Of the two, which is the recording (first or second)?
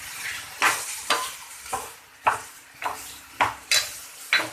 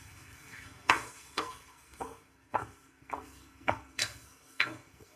first